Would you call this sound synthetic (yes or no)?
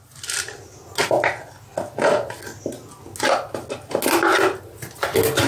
no